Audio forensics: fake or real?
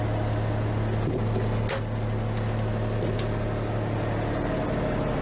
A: real